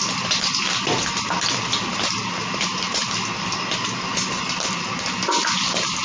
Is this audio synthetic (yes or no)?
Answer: no